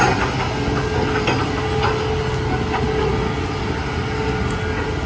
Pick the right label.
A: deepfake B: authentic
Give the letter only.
B